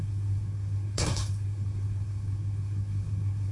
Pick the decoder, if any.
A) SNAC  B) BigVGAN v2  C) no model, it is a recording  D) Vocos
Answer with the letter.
A